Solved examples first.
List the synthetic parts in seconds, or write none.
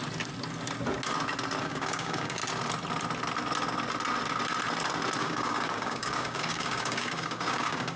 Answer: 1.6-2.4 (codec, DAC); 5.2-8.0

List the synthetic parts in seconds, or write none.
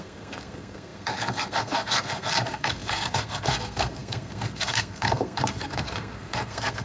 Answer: 0.0-6.8 (codec, SNAC)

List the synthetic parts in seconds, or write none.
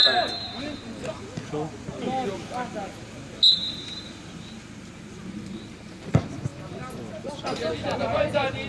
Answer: none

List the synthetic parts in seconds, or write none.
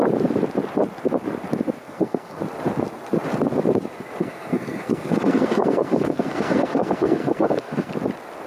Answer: 1.8-2.4 (codec, SNAC); 4.2-7.9